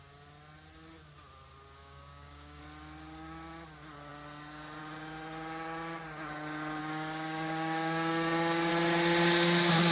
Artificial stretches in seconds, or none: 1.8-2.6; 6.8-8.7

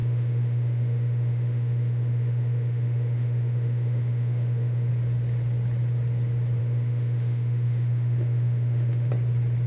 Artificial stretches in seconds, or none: 0.0-4.9; 6.6-9.1

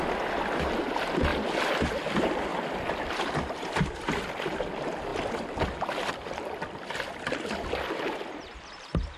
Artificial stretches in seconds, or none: none

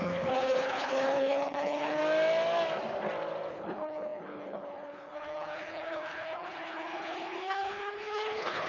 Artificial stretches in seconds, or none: 0.0-2.0; 3.5-8.7

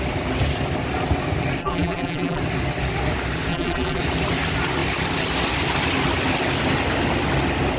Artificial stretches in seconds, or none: 1.6-2.4; 3.5-4.0

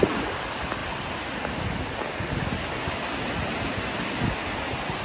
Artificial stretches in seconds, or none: none